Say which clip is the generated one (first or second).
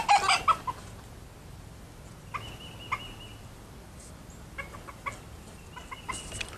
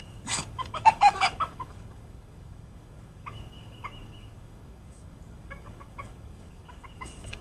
second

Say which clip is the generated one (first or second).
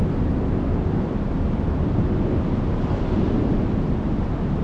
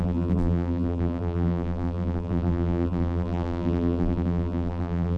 second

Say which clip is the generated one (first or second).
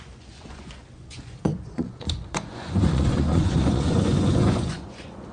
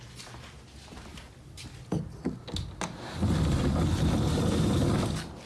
first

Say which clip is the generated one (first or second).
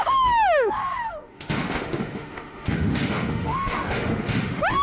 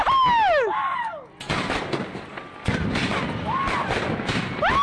first